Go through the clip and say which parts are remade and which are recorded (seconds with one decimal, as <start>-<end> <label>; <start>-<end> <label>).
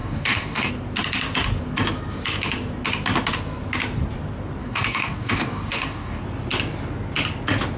0.0-0.7 remade; 0.7-4.6 recorded; 4.6-6.2 remade; 6.2-7.8 recorded